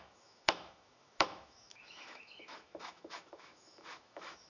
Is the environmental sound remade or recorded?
remade